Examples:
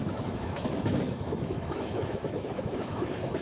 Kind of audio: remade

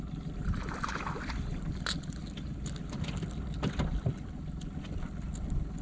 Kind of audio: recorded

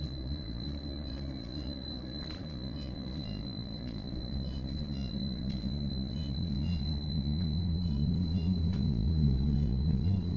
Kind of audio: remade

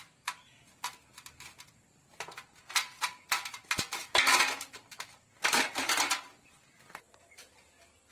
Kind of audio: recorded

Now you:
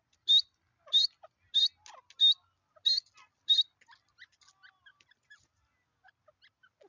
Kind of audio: recorded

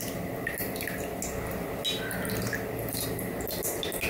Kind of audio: recorded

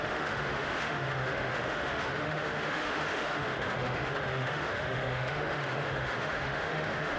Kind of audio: remade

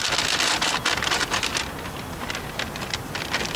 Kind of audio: recorded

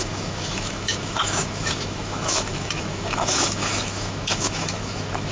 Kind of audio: remade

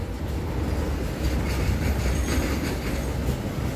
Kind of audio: recorded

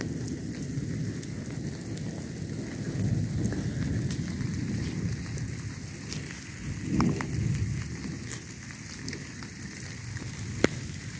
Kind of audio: recorded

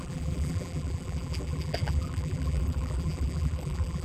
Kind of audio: remade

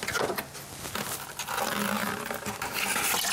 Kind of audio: recorded